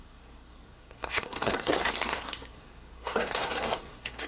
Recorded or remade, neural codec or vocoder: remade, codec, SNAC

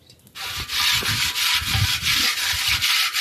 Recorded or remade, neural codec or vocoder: recorded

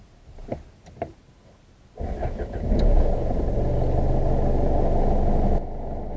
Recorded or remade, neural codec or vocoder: recorded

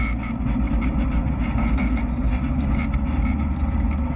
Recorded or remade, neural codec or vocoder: recorded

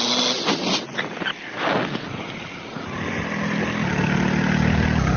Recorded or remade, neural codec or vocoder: recorded